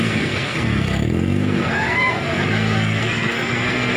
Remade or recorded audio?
remade